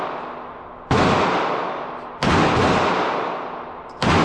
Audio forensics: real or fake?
real